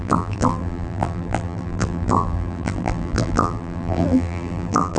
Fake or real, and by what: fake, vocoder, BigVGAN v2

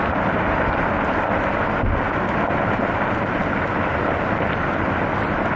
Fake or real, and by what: real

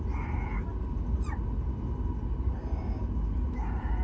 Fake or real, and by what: real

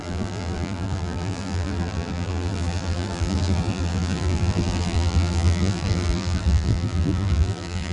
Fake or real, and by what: fake, vocoder, BigVGAN v2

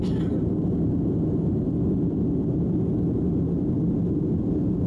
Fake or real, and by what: real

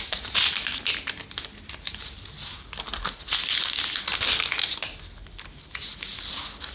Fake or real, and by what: real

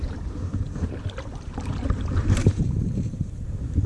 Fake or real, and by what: fake, vocoder, BigVGAN v2